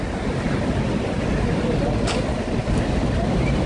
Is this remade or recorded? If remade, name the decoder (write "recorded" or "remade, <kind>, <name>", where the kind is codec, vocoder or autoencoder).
recorded